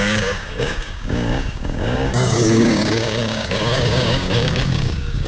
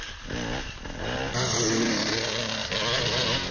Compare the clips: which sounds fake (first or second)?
first